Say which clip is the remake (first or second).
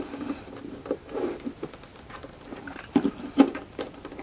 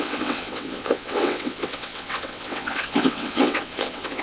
second